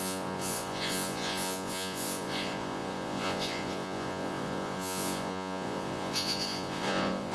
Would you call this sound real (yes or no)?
no